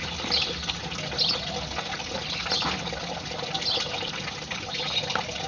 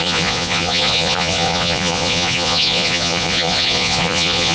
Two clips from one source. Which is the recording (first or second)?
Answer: first